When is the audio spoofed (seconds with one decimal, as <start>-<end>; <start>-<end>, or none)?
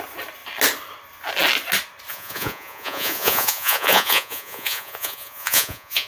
2.1-6.1